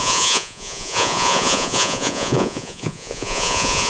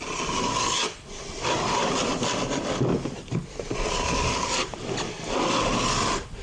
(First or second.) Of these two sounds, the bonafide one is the second